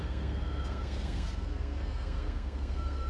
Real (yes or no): no